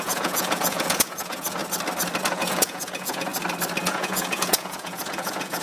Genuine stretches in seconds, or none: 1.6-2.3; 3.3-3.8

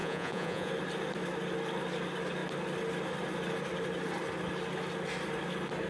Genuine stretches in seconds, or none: 0.7-5.9

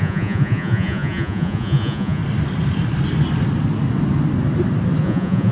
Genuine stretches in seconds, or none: 2.2-5.0

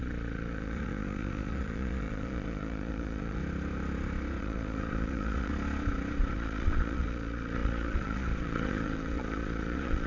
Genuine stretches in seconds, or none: 3.4-4.4; 5.5-6.3